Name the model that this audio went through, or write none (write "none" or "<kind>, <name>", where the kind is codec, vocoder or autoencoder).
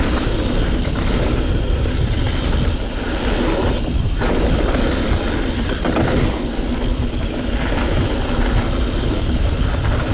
none